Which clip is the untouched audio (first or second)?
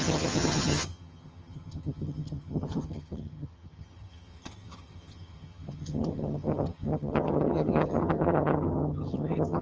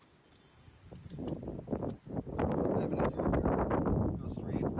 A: second